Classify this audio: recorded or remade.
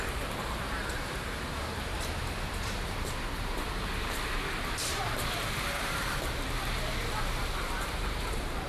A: remade